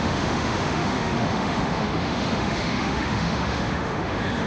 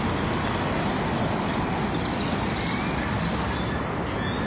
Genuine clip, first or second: second